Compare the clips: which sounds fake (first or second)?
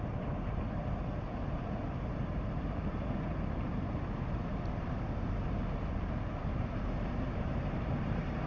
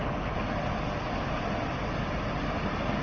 first